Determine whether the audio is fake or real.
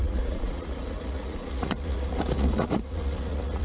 fake